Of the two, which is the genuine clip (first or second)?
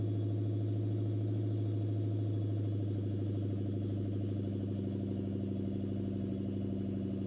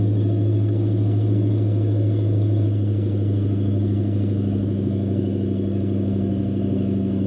first